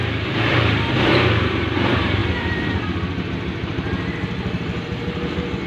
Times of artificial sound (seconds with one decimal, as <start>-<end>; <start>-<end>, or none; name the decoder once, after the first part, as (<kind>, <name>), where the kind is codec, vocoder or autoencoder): 1.4-2.2 (vocoder, BigVGAN v2)